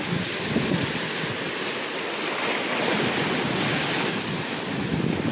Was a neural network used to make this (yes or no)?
no